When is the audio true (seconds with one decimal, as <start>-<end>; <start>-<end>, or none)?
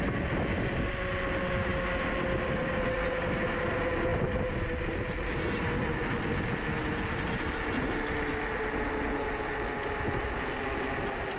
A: 0.0-11.4